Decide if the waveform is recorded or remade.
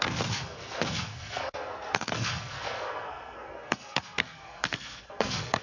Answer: remade